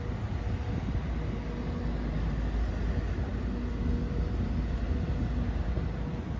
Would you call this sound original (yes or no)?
yes